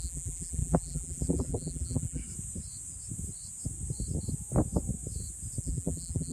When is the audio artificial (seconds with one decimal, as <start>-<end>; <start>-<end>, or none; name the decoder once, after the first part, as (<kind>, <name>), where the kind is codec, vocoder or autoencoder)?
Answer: 0.0-2.2 (vocoder, BigVGAN v2); 5.6-6.3